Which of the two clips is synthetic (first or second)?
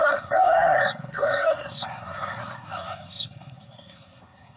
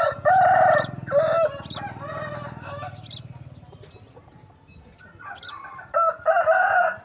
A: first